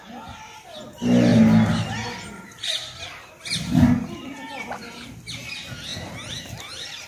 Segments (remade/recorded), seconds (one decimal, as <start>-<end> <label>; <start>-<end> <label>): 0.0-7.1 recorded